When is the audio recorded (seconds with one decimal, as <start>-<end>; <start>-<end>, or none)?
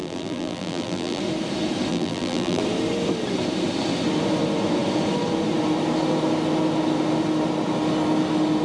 1.2-1.9; 2.6-8.6